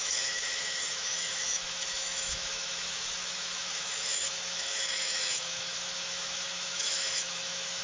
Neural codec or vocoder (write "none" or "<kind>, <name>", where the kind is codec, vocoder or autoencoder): autoencoder, DAC-VAE